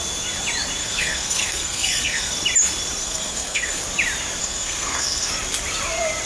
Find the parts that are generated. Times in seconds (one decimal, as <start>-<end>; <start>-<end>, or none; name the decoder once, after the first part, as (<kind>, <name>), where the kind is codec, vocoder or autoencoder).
0.8-2.3 (codec, SNAC); 3.0-3.8; 4.4-5.3